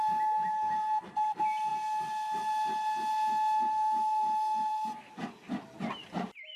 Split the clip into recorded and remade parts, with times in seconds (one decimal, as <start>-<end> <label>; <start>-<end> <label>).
0.0-6.6 recorded